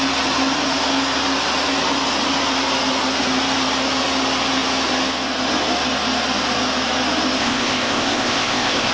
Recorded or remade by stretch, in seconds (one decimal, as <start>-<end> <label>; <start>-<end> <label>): 0.0-7.4 recorded; 7.4-8.9 remade